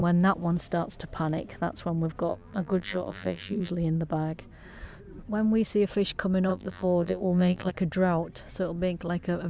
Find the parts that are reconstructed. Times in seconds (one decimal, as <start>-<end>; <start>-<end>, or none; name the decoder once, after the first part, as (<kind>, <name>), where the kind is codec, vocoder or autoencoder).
2.3-3.7 (vocoder, BigVGAN v2); 6.5-7.7